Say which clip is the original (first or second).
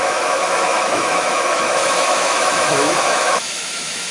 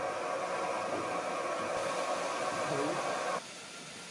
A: second